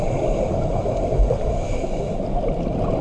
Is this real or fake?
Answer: real